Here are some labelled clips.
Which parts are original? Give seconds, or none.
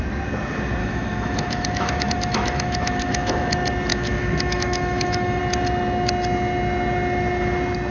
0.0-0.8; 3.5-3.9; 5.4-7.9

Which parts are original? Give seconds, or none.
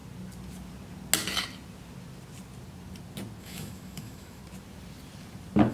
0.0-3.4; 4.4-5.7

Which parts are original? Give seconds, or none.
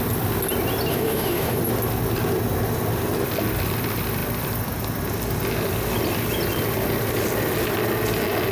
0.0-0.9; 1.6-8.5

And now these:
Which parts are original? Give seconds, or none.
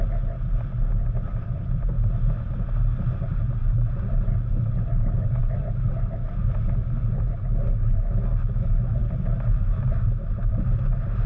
0.0-11.3